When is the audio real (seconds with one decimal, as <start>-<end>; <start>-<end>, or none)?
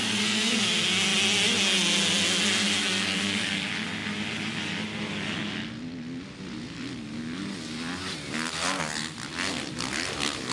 0.6-2.8; 3.6-10.5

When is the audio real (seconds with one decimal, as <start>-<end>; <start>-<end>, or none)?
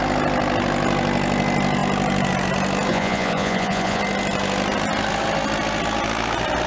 0.0-2.9; 4.0-6.7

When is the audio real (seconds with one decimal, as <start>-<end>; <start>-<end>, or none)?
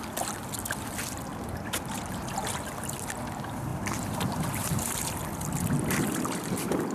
0.0-6.9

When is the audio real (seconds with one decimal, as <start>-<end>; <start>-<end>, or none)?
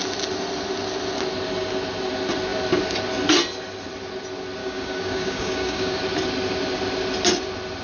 0.0-4.6; 6.0-7.8